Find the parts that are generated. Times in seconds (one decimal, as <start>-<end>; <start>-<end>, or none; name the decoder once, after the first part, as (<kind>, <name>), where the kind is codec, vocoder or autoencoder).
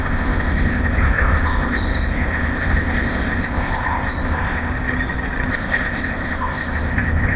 0.0-4.7 (codec, ZipCodec); 5.5-7.4